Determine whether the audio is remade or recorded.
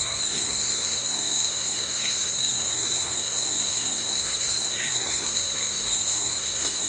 remade